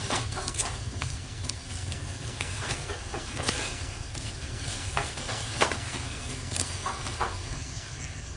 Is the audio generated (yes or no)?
yes